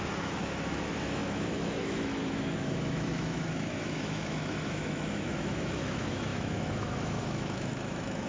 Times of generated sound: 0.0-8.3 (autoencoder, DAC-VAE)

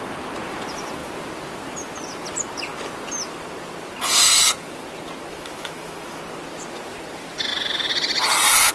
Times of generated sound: 5.3-6.2 (autoencoder, DAC-VAE)

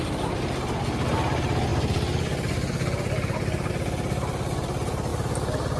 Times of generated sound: none